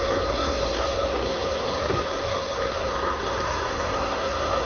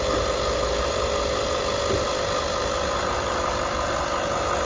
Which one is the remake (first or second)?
first